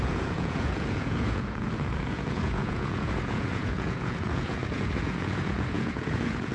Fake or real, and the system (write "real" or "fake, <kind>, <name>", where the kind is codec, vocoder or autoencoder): fake, vocoder, Vocos